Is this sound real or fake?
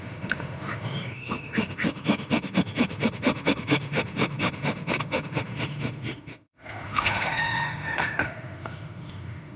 fake